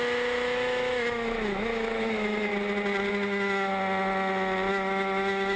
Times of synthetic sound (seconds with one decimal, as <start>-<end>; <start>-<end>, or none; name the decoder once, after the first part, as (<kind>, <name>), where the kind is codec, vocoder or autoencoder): 0.0-2.5 (autoencoder, DAC-VAE); 3.1-3.7; 4.7-5.6

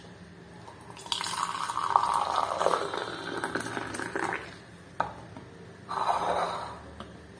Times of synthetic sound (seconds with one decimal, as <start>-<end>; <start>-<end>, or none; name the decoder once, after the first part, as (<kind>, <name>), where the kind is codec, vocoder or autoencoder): none